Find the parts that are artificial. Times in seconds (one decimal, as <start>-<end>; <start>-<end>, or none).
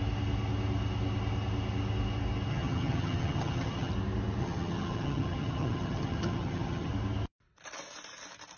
2.5-3.9; 4.4-6.9